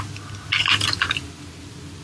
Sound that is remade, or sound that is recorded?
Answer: recorded